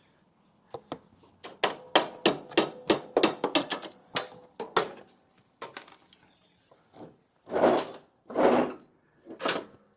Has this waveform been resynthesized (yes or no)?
no